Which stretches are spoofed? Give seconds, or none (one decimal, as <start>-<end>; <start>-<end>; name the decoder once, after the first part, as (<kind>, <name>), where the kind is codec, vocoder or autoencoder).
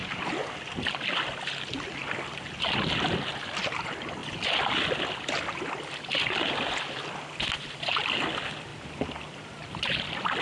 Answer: none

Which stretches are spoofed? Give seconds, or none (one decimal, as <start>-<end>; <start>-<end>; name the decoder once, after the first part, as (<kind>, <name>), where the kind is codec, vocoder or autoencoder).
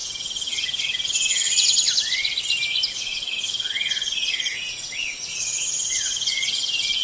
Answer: 2.9-7.0 (vocoder, Vocos)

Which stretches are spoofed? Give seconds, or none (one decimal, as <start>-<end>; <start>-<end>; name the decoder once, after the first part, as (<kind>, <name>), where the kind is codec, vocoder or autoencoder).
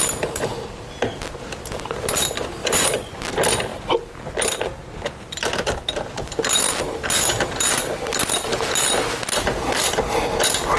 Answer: 2.6-3.2 (vocoder, Vocos)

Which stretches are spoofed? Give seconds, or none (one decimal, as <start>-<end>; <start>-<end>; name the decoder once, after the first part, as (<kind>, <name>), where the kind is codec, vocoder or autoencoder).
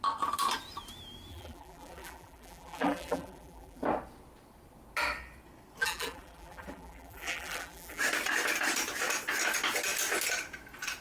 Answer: 1.3-3.8 (vocoder, BigVGAN v2); 5.8-8.0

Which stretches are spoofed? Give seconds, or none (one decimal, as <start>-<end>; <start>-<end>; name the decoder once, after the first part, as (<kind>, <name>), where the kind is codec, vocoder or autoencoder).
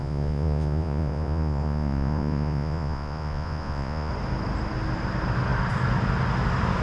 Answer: 0.0-4.1 (vocoder, Vocos)